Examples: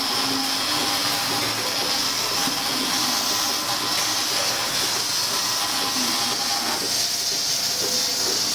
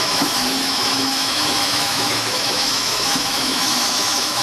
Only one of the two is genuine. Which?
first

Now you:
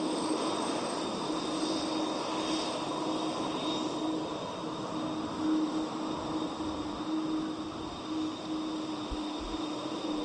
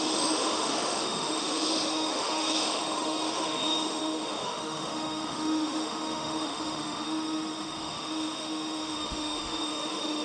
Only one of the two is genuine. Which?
first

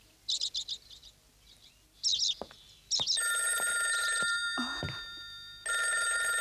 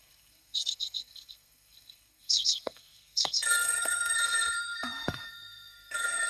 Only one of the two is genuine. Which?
first